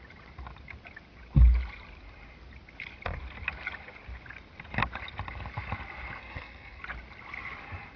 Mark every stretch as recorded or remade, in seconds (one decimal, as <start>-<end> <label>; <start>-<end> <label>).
0.0-6.2 recorded; 6.2-6.8 remade; 6.8-8.0 recorded